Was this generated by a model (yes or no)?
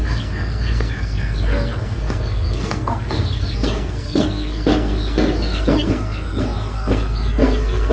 yes